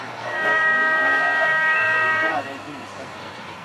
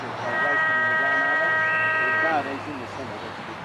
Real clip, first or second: second